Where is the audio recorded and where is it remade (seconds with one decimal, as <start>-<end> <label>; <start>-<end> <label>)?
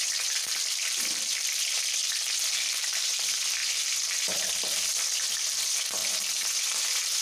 0.0-2.0 remade; 2.0-2.7 recorded; 2.7-3.6 remade; 3.6-4.8 recorded; 4.8-6.0 remade; 6.0-6.8 recorded; 6.8-7.2 remade